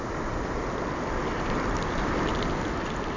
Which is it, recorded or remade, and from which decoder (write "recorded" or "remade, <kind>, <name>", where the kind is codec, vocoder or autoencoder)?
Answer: recorded